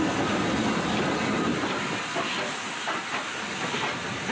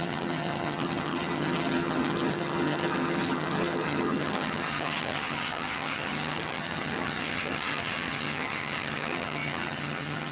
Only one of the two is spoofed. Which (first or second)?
second